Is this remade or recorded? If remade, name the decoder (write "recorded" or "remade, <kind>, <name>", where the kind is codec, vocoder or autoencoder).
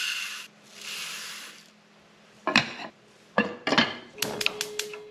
recorded